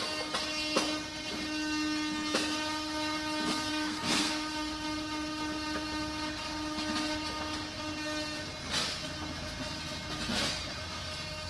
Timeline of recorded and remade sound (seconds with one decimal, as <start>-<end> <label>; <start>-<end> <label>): 0.0-3.7 recorded; 3.7-4.3 remade; 4.3-11.5 recorded